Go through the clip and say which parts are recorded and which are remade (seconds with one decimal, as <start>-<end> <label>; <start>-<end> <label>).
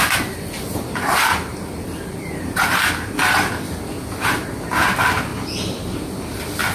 0.0-1.5 recorded; 1.5-2.8 remade; 2.8-6.7 recorded